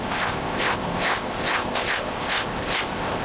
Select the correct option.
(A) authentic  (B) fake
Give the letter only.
B